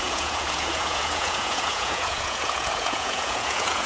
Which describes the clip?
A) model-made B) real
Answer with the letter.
A